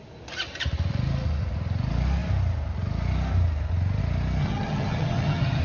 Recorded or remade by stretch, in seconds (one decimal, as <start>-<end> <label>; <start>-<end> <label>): 0.0-4.4 recorded; 4.4-5.6 remade

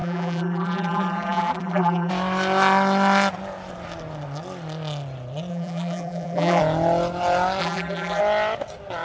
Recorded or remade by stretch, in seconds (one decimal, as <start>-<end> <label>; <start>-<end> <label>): 0.0-2.1 remade; 2.1-5.5 recorded; 5.5-6.6 remade; 6.6-7.6 recorded; 7.6-8.2 remade; 8.2-9.0 recorded

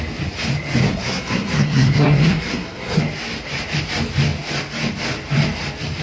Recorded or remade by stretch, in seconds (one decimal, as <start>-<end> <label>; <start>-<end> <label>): 0.0-0.8 recorded; 0.8-3.0 remade; 3.0-6.0 recorded

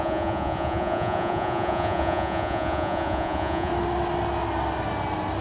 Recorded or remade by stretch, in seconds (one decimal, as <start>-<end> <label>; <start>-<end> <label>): 0.0-3.7 remade; 3.7-5.4 recorded

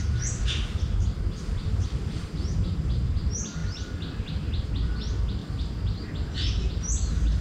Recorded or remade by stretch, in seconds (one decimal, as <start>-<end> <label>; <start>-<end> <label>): 0.0-7.4 recorded

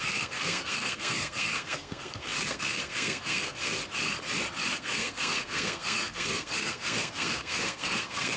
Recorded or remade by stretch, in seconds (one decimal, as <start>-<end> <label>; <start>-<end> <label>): 0.0-3.8 remade; 3.8-4.7 recorded; 4.7-8.4 remade